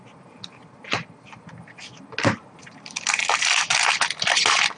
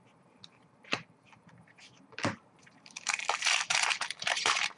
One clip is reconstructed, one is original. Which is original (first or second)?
first